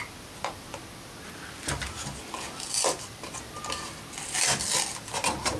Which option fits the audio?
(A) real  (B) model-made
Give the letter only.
A